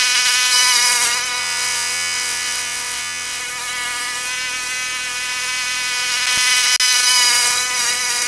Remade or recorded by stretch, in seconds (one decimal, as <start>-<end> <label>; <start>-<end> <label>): 0.0-1.4 recorded; 1.4-3.4 remade; 3.4-8.3 recorded